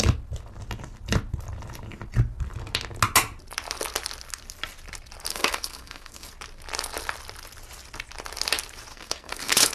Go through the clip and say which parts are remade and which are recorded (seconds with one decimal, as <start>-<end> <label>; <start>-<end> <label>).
0.0-5.3 recorded; 5.3-6.3 remade; 6.3-8.9 recorded; 8.9-9.7 remade

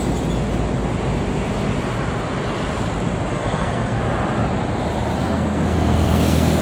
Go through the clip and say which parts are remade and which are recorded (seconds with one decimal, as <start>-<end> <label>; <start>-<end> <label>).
0.0-3.3 recorded; 3.3-4.0 remade; 4.0-5.2 recorded; 5.2-6.6 remade

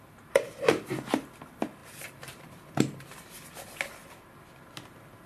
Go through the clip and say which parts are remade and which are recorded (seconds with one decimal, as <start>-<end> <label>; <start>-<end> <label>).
0.0-5.3 recorded

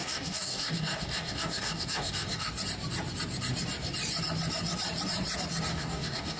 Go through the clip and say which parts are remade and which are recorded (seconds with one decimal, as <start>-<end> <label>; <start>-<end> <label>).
0.0-2.5 remade; 2.5-5.7 recorded; 5.7-6.4 remade

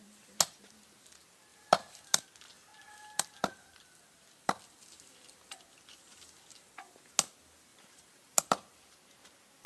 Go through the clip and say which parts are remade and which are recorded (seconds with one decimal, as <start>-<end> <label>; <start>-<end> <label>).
0.0-1.5 recorded; 1.5-2.2 remade; 2.2-2.7 recorded; 2.7-6.4 remade; 6.4-7.7 recorded; 7.7-9.0 remade; 9.0-9.7 recorded

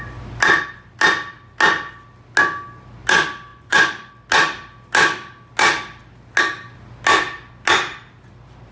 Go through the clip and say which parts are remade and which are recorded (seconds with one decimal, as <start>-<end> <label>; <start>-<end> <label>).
0.0-3.5 recorded; 3.5-4.1 remade; 4.1-8.7 recorded